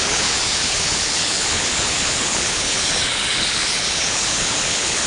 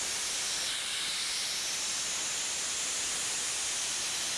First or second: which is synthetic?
first